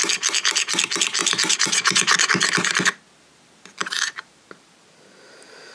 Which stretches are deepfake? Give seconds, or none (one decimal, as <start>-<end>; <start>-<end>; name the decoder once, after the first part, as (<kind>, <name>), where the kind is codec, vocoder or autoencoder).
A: 1.2-3.0 (vocoder, BigVGAN v2); 3.8-4.7